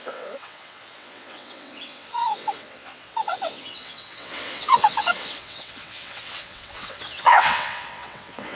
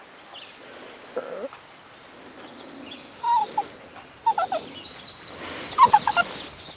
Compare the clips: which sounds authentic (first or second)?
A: second